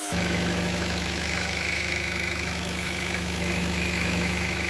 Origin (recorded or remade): remade